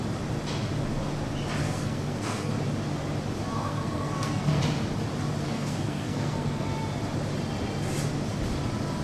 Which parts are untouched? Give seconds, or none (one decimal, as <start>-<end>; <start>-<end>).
0.0-1.6; 2.5-3.5; 4.6-5.4; 6.7-9.0